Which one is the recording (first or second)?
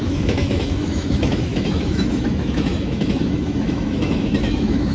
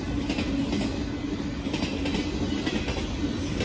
second